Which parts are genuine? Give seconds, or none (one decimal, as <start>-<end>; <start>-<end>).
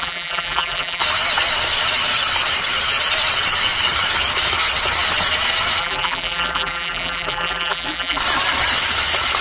1.0-5.8; 8.2-9.4